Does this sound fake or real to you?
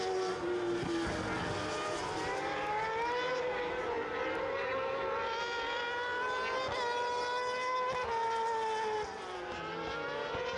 real